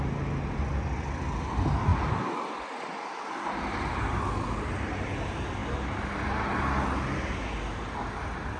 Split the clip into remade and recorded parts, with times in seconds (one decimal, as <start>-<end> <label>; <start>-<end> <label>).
0.0-8.6 recorded